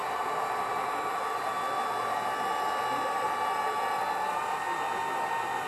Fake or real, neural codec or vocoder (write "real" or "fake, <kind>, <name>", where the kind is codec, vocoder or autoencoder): real